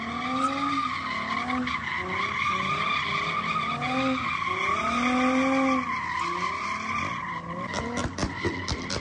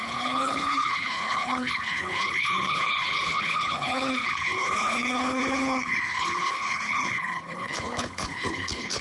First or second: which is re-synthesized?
second